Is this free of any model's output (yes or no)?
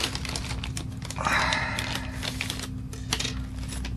yes